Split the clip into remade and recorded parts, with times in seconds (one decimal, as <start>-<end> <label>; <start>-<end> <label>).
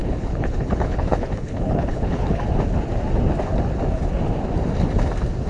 0.0-2.4 remade; 2.4-5.5 recorded